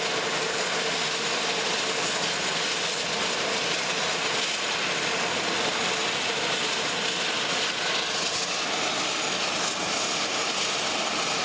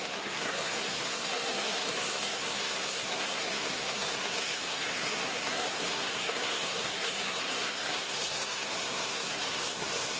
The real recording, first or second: first